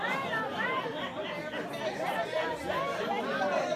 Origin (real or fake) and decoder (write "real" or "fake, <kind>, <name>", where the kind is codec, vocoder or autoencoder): real